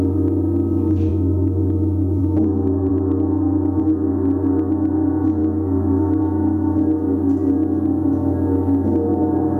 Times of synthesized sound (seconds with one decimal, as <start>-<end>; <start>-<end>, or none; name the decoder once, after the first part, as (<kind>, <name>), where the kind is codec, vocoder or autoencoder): 1.1-2.2 (autoencoder, DAC-VAE); 2.9-3.8; 5.4-6.2